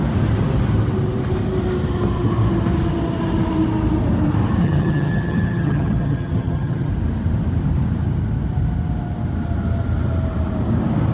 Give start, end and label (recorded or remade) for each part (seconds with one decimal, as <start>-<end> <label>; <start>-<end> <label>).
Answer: 0.0-4.6 recorded; 4.6-6.9 remade; 6.9-11.1 recorded